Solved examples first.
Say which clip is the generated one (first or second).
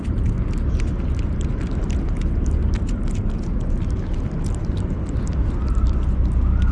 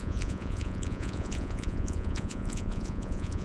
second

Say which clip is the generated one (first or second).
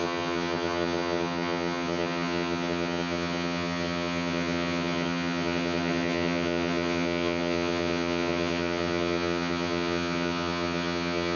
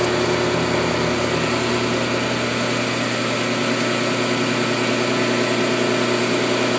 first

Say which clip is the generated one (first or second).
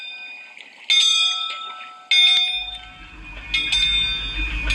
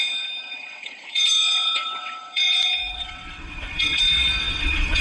second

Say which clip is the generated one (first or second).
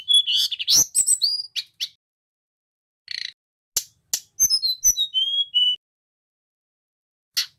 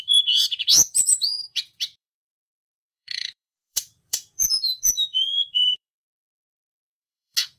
second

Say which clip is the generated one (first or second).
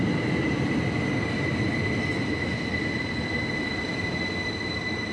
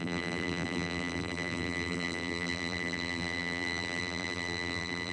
second